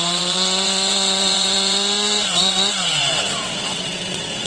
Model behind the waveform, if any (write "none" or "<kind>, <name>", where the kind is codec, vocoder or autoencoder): vocoder, WaveNeXt